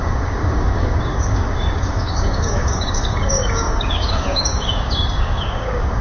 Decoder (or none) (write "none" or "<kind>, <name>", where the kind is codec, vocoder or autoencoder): codec, DAC